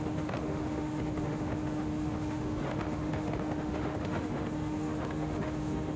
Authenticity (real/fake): fake